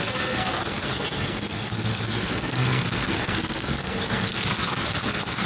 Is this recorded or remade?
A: remade